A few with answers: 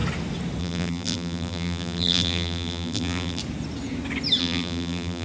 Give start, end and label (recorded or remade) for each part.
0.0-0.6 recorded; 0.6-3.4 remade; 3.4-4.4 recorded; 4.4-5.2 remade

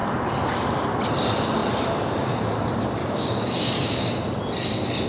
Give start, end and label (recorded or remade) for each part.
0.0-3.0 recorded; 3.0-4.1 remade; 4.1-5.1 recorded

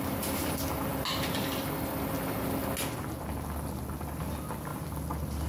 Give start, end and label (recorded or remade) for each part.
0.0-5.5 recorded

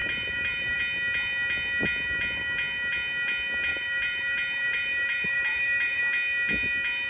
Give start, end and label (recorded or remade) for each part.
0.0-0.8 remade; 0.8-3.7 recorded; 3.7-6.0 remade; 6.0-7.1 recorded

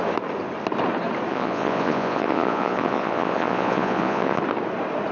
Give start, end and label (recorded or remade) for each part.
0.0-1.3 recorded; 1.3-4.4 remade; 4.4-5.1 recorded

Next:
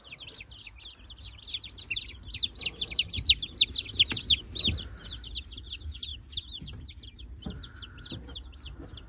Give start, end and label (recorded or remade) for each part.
0.0-9.1 recorded

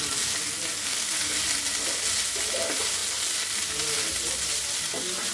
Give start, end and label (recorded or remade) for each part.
0.0-0.8 recorded; 0.8-1.4 remade; 1.4-5.3 recorded